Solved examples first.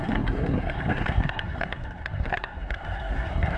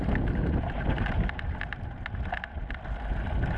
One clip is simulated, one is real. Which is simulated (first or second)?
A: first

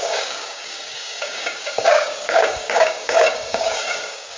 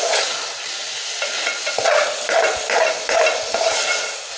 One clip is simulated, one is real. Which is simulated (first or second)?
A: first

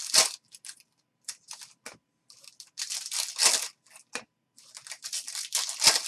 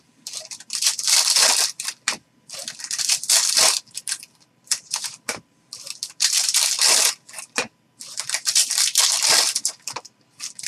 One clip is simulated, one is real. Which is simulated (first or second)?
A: second